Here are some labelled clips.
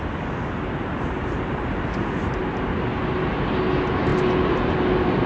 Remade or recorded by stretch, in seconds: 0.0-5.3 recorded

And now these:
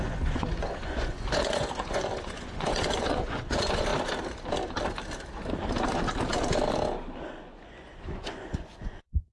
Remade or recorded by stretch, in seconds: 0.0-3.9 remade; 3.9-7.3 recorded; 7.3-9.3 remade

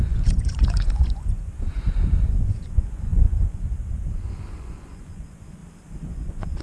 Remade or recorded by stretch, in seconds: 0.0-3.6 remade; 3.6-4.2 recorded; 4.2-5.6 remade; 5.6-6.1 recorded; 6.1-6.6 remade

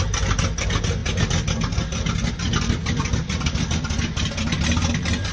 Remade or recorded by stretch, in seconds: 0.0-5.3 recorded

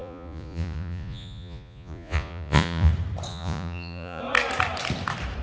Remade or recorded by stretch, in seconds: 0.0-2.9 remade; 2.9-3.3 recorded; 3.3-4.2 remade; 4.2-5.4 recorded